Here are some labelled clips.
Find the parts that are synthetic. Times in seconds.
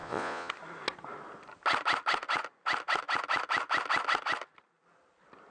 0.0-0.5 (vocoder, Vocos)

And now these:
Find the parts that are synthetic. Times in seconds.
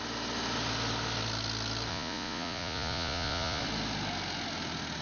1.9-3.6 (vocoder, Vocos)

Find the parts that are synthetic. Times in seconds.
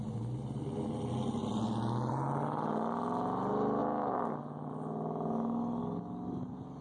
none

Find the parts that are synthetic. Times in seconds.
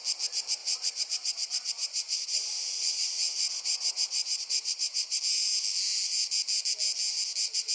0.6-5.2 (vocoder, Vocos)